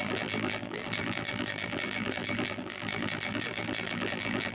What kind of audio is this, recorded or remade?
remade